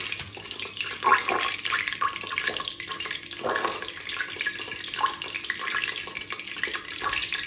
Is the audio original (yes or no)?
yes